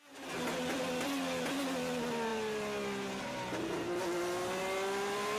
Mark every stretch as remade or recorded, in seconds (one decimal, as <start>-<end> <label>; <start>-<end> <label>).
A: 0.0-5.4 recorded